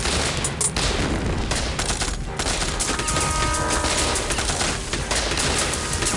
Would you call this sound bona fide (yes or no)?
yes